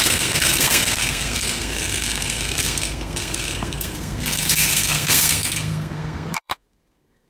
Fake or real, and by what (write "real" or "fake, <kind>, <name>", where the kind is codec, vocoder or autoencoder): fake, codec, SNAC